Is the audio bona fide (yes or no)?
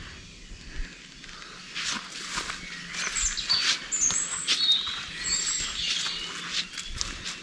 yes